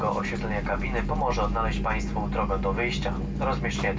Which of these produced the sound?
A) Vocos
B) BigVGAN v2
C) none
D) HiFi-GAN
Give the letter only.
C